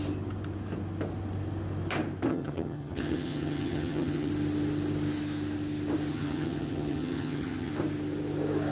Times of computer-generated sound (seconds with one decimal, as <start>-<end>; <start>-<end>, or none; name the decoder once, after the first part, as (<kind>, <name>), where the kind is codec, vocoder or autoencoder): 2.3-4.3 (vocoder, HiFi-GAN); 6.1-7.7